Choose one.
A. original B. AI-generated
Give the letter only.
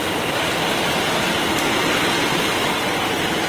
A